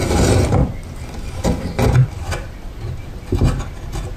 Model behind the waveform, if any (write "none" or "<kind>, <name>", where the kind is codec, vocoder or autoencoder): none